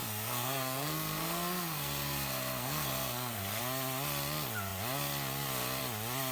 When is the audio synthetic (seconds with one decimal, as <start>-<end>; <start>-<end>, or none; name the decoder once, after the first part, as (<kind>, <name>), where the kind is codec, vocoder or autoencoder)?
0.0-3.6 (codec, SNAC)